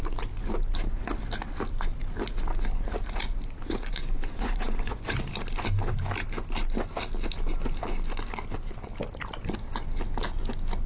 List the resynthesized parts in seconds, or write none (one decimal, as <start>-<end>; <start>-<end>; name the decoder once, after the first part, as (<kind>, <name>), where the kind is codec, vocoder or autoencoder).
3.9-5.2 (vocoder, Vocos)